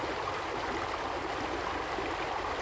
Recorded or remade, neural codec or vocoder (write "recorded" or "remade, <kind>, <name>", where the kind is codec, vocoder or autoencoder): recorded